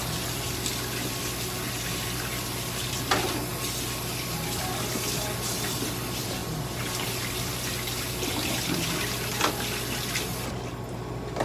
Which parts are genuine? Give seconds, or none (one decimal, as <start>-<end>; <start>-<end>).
0.0-11.4